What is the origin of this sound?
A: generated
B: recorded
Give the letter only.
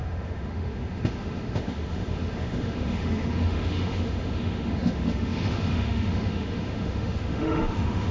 A